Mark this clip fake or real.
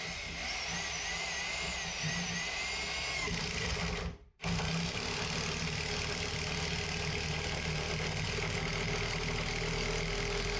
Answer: real